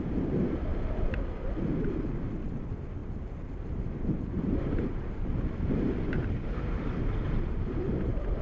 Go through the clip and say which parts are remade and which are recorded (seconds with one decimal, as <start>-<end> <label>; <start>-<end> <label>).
0.0-0.7 remade; 0.7-2.6 recorded; 2.6-8.4 remade